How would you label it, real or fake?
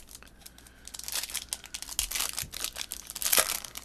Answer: real